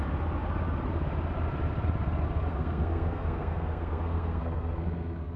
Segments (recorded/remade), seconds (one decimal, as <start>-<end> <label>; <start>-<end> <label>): 0.0-2.5 recorded; 2.5-5.4 remade